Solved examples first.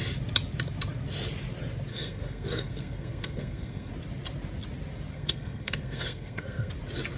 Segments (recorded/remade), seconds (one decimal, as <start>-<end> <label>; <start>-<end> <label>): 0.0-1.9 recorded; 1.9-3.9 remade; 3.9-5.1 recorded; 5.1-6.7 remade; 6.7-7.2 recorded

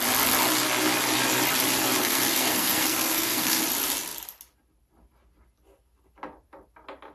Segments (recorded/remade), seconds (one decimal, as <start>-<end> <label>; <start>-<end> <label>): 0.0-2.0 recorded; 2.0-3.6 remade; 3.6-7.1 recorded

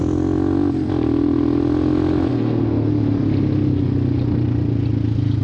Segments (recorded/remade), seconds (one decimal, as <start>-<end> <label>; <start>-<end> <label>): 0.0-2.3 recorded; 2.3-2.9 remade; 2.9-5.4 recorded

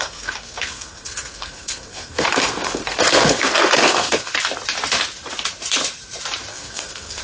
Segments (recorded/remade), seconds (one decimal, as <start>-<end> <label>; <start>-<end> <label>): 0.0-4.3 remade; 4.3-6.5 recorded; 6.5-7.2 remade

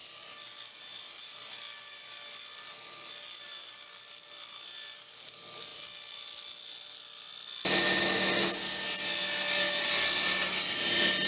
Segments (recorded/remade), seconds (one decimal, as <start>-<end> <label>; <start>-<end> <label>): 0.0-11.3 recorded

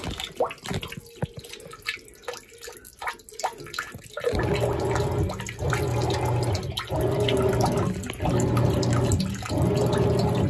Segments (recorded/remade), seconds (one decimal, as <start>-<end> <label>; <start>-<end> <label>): 0.0-10.5 recorded

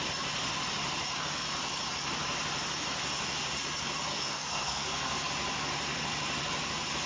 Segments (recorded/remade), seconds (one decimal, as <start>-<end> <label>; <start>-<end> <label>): 0.0-4.1 recorded; 4.1-5.3 remade; 5.3-7.1 recorded

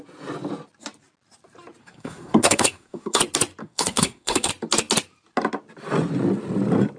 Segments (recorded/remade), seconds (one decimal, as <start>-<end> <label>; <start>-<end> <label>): 0.0-1.8 recorded; 1.8-3.2 remade; 3.2-3.6 recorded; 3.6-4.5 remade; 4.5-7.0 recorded